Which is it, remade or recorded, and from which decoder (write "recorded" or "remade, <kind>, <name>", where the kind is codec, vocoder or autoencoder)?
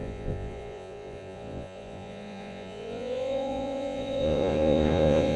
remade, vocoder, Vocos